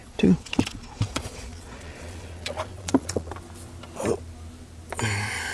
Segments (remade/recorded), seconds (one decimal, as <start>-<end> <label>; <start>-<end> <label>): 0.0-3.3 remade; 3.3-5.5 recorded